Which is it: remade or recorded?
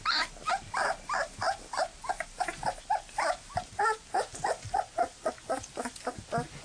recorded